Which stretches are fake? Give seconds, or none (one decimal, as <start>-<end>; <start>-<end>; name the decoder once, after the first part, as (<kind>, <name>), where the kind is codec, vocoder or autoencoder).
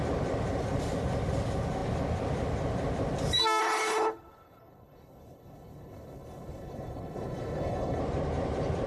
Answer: 3.6-8.0 (codec, HILCodec)